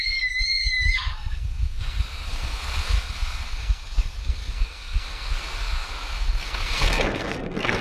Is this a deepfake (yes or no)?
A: yes